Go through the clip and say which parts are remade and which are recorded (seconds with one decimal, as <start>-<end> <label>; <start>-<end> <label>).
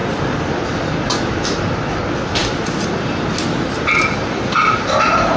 0.0-5.4 remade